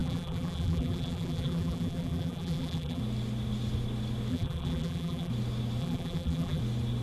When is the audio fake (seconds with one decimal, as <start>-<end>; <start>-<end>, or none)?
0.0-3.0; 4.3-5.3; 5.8-6.6